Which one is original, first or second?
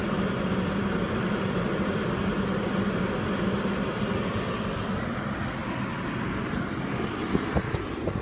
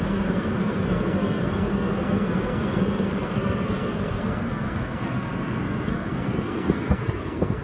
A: first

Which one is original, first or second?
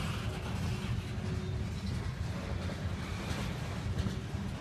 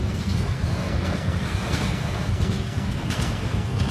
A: first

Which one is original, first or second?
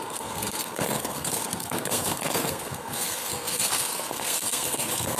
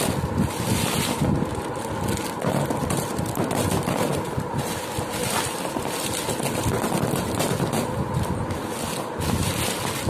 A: second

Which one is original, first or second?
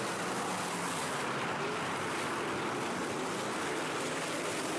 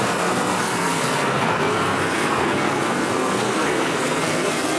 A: first